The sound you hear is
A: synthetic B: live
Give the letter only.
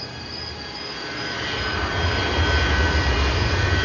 B